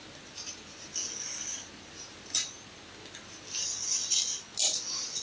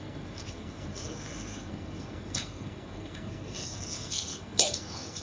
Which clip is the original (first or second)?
first